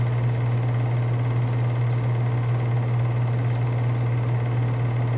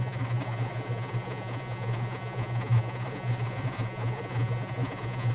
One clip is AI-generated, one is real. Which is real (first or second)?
first